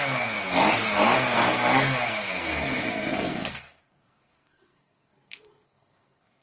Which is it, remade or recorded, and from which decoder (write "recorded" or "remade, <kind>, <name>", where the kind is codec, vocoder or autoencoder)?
remade, codec, SNAC